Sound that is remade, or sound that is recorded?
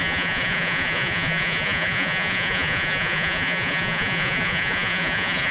remade